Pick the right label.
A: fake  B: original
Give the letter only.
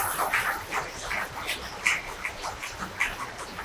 B